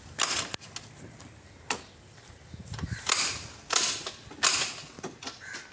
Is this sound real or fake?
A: real